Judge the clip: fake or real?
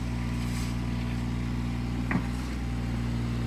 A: real